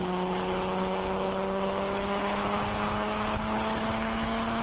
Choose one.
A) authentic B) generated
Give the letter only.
B